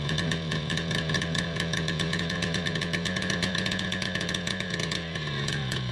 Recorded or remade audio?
remade